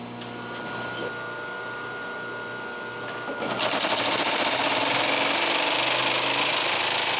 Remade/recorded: recorded